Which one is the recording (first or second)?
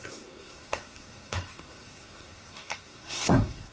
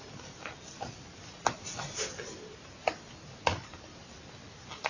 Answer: second